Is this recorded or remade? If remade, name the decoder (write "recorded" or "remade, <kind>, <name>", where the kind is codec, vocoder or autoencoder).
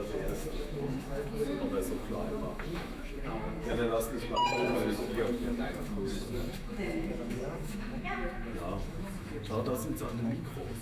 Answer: remade, autoencoder, DAC-VAE